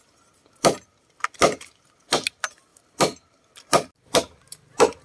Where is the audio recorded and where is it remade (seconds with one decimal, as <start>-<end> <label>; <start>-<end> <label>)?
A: 0.0-5.0 recorded